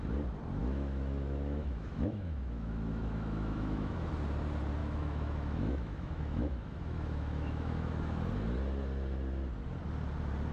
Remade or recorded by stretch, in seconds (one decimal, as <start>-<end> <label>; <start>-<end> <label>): 0.0-0.6 recorded; 0.6-4.1 remade; 4.1-4.8 recorded; 4.8-8.3 remade; 8.3-10.5 recorded